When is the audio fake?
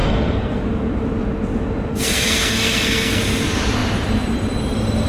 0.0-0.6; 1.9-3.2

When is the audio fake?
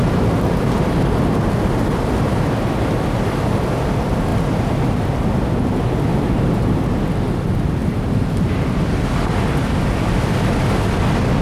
none